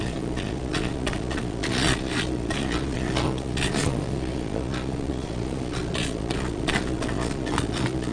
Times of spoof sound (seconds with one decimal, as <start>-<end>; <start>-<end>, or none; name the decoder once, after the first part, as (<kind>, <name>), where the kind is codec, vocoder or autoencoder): 0.0-8.1 (vocoder, Vocos)